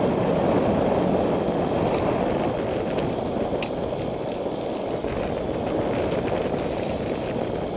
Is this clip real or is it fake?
real